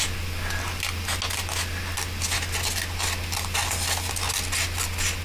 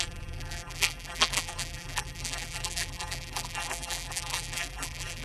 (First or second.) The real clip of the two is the first